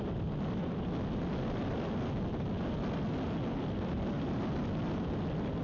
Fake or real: real